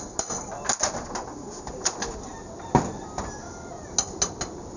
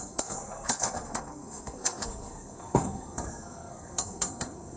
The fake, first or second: second